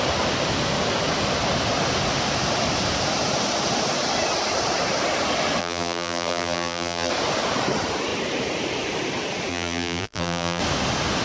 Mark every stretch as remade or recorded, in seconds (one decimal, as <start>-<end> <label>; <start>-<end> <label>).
0.0-5.6 recorded; 5.6-7.1 remade; 7.1-9.5 recorded; 9.5-10.6 remade; 10.6-11.2 recorded